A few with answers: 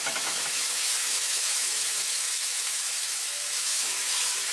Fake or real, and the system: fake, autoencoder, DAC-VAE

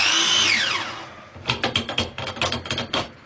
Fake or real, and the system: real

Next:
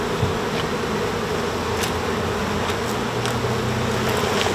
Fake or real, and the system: real